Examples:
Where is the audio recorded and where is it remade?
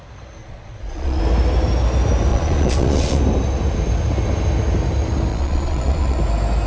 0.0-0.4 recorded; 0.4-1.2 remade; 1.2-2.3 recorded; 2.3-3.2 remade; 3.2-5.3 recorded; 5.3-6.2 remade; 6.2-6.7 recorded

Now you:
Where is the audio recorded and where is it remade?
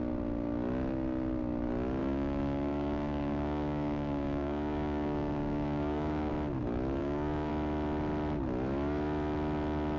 0.0-2.0 recorded; 2.0-6.3 remade; 6.3-7.0 recorded; 7.0-7.5 remade; 7.5-10.0 recorded